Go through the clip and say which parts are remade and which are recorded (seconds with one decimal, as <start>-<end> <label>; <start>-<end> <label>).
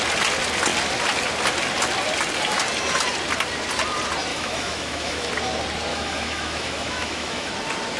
0.0-4.3 recorded; 4.3-5.3 remade; 5.3-5.9 recorded; 5.9-7.5 remade; 7.5-8.0 recorded